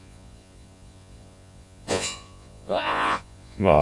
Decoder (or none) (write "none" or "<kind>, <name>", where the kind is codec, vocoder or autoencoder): vocoder, Vocos